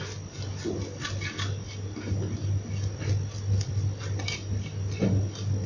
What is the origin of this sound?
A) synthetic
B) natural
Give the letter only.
B